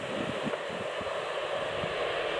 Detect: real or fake real